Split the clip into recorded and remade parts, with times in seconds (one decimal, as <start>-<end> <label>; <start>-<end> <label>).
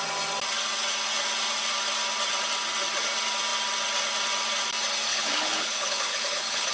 0.0-5.1 recorded; 5.1-6.7 remade